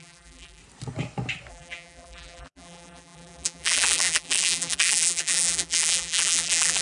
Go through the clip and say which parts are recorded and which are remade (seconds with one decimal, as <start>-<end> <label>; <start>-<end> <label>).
0.0-0.6 remade; 0.6-1.5 recorded; 1.5-6.8 remade